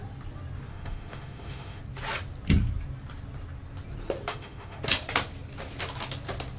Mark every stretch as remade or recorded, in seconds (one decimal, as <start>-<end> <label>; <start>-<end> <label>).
0.0-0.7 recorded; 0.7-1.8 remade; 1.8-4.3 recorded; 4.3-4.8 remade; 4.8-6.6 recorded